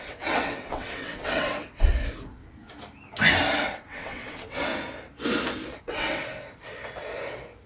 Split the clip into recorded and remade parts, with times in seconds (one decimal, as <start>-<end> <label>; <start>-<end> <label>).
0.0-1.9 remade; 1.9-3.6 recorded; 3.6-4.7 remade; 4.7-5.8 recorded; 5.8-6.2 remade; 6.2-7.7 recorded